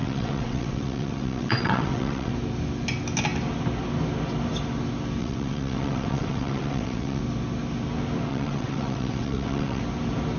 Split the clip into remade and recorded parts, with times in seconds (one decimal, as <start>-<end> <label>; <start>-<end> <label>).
0.0-2.3 remade; 2.3-5.2 recorded; 5.2-7.2 remade; 7.2-8.3 recorded; 8.3-9.8 remade; 9.8-10.4 recorded